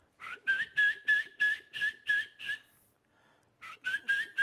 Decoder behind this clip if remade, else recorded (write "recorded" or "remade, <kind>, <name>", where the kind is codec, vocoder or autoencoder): recorded